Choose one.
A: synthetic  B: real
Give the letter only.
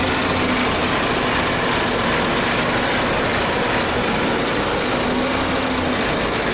B